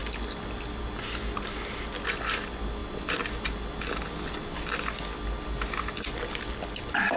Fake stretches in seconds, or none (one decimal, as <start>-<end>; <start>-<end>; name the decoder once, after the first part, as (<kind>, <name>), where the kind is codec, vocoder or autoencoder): none